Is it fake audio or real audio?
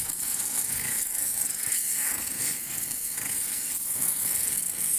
fake